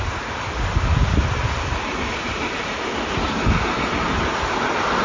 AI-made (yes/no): no